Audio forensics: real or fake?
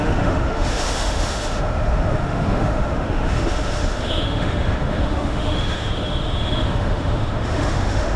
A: fake